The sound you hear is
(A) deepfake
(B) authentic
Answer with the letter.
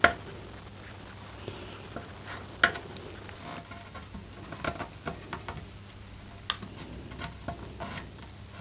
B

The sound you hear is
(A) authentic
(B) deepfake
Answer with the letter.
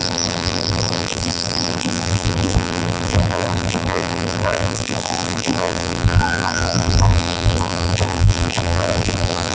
B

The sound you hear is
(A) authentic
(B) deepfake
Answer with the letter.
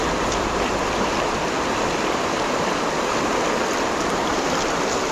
A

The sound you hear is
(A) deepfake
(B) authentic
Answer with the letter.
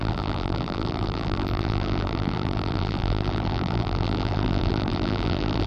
A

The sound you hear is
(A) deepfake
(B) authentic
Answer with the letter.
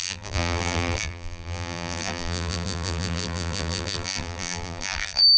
A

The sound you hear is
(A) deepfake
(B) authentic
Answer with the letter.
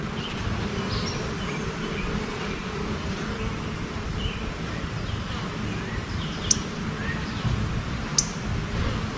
B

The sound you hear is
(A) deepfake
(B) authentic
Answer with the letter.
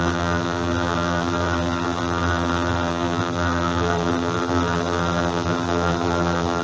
A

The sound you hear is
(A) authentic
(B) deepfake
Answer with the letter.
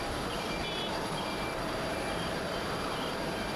B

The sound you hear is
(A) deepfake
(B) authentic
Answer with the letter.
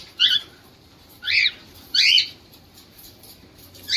A